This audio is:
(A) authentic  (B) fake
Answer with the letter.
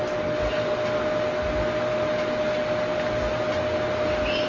A